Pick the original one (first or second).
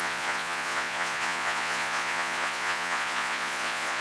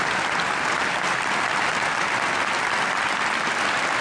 second